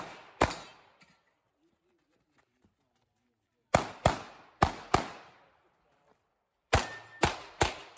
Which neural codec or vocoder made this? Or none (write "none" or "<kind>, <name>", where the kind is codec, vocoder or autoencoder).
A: none